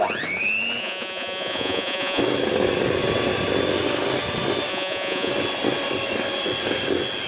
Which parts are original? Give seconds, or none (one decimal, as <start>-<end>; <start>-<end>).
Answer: 0.0-0.8; 2.2-4.7; 5.3-7.3